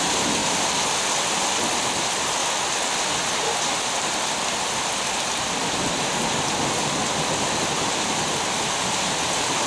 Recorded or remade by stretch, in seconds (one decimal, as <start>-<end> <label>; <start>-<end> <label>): 0.0-9.7 recorded